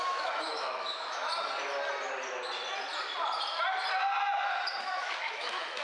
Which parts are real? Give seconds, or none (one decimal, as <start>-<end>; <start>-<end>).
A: 1.3-4.8